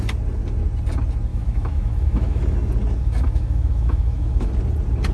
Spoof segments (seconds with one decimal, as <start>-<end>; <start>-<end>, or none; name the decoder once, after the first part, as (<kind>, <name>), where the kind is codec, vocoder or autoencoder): 1.3-2.4 (autoencoder, DAC-VAE); 3.0-4.5